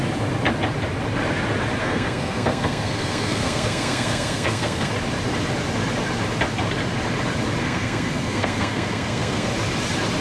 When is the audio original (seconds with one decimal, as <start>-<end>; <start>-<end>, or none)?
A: 0.0-1.8; 4.9-7.6; 9.5-10.2